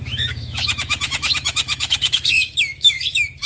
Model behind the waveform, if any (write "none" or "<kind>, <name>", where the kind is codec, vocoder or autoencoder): autoencoder, DAC-VAE